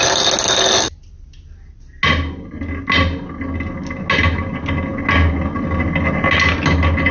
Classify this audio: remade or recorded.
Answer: recorded